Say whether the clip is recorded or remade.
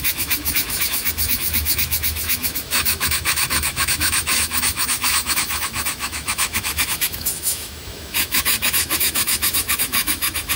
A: remade